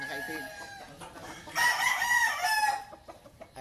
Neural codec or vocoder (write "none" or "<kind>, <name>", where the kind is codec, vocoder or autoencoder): none